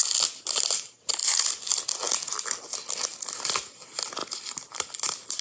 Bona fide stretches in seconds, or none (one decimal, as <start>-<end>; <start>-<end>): 0.0-4.2